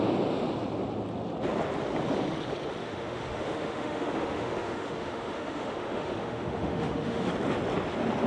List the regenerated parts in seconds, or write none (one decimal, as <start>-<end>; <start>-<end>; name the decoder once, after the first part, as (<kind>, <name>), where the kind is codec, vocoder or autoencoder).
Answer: 2.8-7.3 (autoencoder, DAC-VAE)